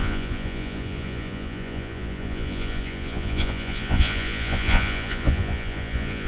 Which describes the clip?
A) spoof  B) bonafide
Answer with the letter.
A